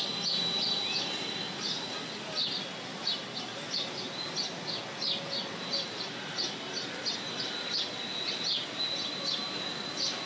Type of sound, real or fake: real